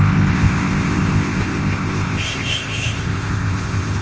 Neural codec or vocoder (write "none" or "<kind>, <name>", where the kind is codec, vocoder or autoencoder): codec, ZipCodec